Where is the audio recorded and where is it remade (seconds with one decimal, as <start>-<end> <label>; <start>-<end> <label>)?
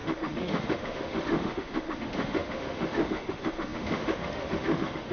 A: 0.0-5.1 remade